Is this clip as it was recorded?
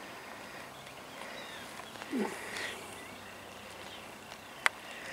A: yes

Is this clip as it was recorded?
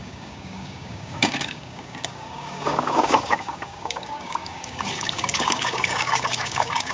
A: no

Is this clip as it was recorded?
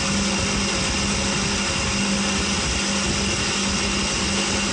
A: yes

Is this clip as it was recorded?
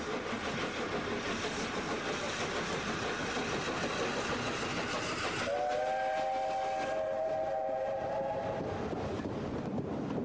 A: yes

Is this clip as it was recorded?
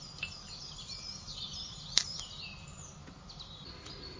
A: yes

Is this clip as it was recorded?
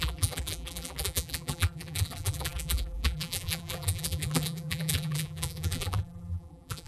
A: no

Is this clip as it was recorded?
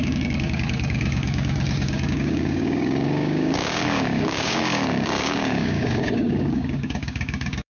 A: no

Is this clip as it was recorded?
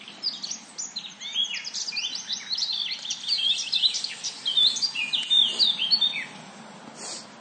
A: yes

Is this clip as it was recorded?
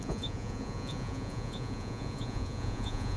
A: no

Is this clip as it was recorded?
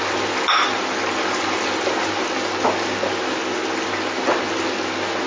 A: yes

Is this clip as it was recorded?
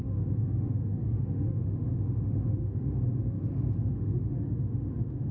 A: no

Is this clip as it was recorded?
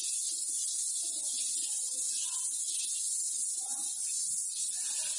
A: yes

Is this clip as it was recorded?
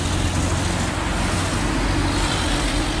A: yes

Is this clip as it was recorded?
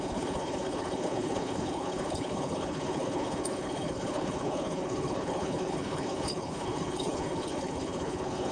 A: no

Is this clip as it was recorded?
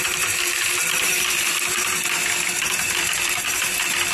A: no